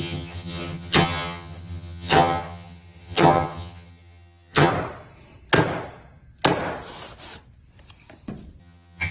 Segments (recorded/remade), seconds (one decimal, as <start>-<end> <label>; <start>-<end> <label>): 0.0-4.7 remade; 4.7-8.6 recorded; 8.6-9.1 remade